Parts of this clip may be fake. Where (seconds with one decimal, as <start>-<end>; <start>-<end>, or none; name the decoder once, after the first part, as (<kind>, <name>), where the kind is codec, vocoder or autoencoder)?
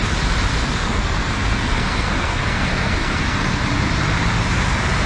0.5-3.6 (codec, SNAC)